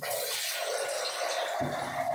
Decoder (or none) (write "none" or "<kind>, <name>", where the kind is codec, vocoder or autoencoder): none